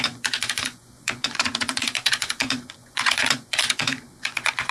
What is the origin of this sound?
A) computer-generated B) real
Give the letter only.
A